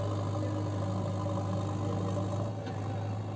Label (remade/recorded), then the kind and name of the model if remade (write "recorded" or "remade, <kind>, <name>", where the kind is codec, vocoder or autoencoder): recorded